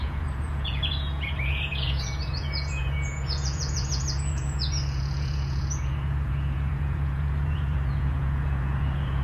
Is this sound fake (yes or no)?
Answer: yes